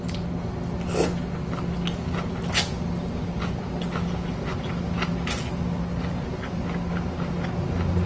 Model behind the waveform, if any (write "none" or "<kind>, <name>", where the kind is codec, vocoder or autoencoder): none